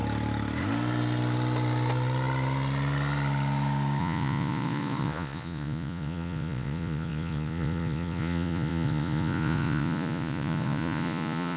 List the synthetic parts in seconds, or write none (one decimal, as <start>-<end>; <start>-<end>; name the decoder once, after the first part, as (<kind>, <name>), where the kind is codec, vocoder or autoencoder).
4.0-11.6 (vocoder, Vocos)